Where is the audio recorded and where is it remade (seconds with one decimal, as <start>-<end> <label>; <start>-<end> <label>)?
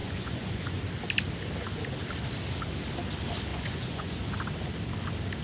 0.0-0.8 remade; 0.8-3.5 recorded; 3.5-4.3 remade; 4.3-5.4 recorded